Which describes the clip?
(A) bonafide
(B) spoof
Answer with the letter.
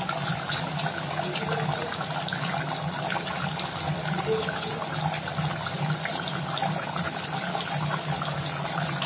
A